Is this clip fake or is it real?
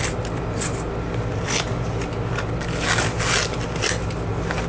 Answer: real